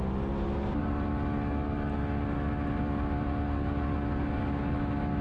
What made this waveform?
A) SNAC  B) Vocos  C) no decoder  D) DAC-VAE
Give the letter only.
C